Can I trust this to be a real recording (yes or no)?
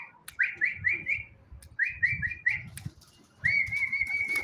yes